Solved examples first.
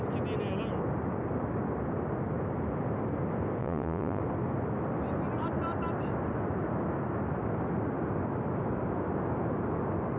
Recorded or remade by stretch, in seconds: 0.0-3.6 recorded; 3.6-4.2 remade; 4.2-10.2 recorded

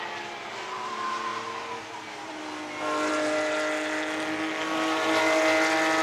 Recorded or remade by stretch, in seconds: 0.0-6.0 recorded

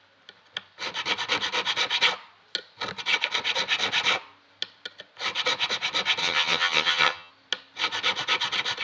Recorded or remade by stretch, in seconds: 0.0-6.2 recorded; 6.2-7.3 remade; 7.3-8.8 recorded

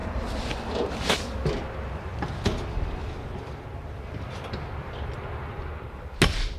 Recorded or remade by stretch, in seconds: 0.0-2.1 recorded; 2.1-4.4 remade; 4.4-6.6 recorded

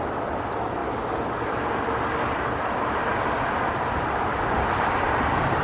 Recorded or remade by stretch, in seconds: 0.0-0.8 remade; 0.8-3.7 recorded; 3.7-5.6 remade

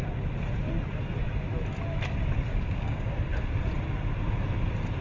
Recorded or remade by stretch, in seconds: 0.0-2.5 recorded; 2.5-3.1 remade; 3.1-5.0 recorded